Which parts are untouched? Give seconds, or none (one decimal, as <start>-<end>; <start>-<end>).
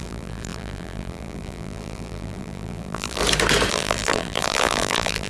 3.2-3.7